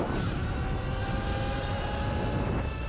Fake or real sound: real